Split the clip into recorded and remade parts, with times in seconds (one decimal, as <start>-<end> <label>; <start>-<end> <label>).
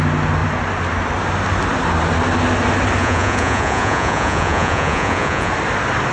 0.0-3.0 recorded; 3.0-5.5 remade; 5.5-6.1 recorded